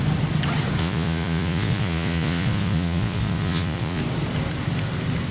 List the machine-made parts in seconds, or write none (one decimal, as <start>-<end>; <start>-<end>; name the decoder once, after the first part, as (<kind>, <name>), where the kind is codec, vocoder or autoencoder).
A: 0.8-4.0 (vocoder, Vocos)